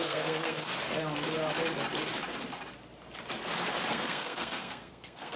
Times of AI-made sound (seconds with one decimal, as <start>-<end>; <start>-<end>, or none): 0.0-0.7; 3.9-5.4